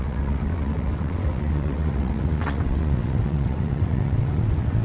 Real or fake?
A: fake